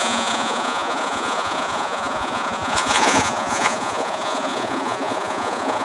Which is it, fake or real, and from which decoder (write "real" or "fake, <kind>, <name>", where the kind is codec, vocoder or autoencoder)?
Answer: fake, vocoder, Vocos